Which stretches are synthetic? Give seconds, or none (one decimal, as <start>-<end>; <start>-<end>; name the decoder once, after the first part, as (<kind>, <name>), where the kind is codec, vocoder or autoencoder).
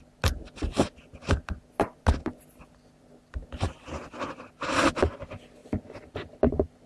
none